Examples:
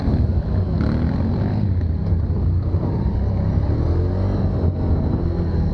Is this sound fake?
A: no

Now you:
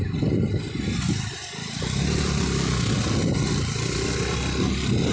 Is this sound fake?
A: no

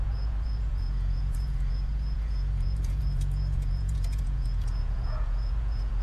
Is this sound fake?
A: yes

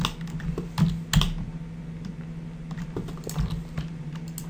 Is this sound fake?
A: no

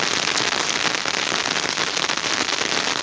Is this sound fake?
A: no